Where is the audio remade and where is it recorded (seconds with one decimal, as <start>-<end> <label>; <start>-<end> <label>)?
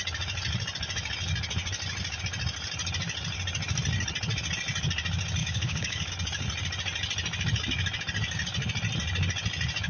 0.0-5.4 recorded; 5.4-6.1 remade; 6.1-9.9 recorded